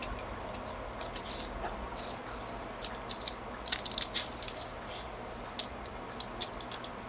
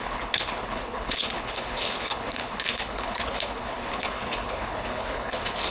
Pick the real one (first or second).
first